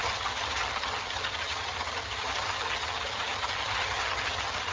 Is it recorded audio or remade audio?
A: remade